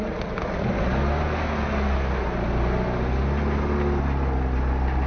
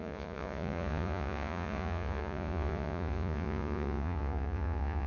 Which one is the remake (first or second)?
second